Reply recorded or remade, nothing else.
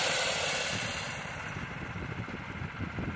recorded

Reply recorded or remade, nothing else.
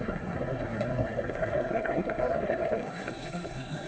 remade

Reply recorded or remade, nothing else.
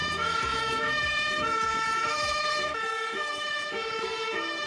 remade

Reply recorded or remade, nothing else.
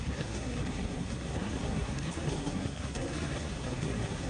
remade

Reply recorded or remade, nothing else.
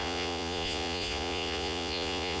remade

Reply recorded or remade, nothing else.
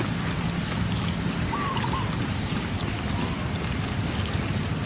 recorded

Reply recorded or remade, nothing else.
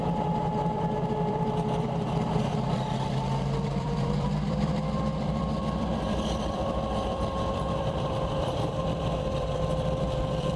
remade